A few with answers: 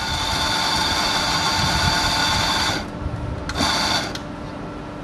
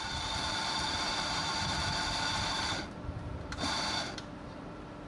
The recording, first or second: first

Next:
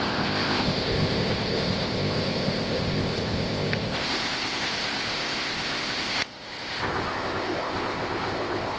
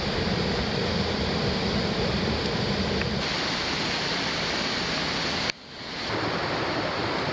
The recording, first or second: second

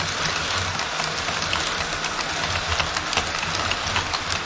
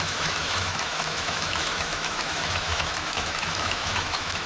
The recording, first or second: first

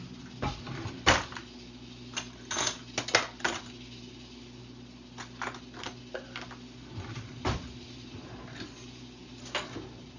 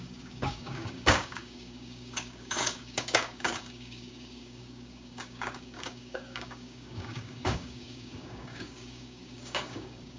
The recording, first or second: first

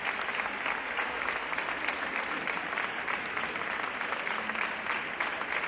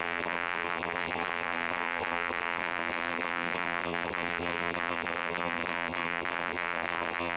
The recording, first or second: first